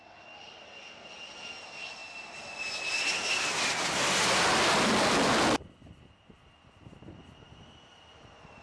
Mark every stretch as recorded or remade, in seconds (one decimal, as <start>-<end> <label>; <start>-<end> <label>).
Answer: 0.0-8.6 recorded